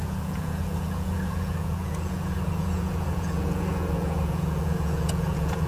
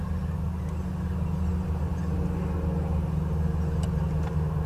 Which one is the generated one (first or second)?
first